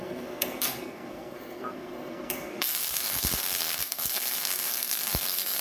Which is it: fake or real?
fake